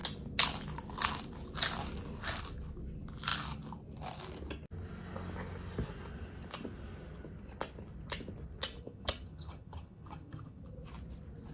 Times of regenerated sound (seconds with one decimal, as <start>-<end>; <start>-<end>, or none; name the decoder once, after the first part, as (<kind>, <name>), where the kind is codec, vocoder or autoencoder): 8.8-10.6 (vocoder, HiFi-GAN)